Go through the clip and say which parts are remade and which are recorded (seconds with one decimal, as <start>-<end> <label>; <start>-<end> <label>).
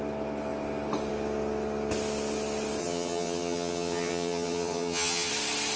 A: 0.0-2.8 recorded; 2.8-5.3 remade; 5.3-5.8 recorded